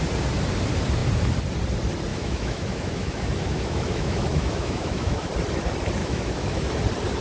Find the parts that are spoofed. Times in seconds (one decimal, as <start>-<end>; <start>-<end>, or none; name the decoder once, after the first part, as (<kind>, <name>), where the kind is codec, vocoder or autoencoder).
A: 2.1-5.3 (autoencoder, DAC-VAE); 6.0-6.7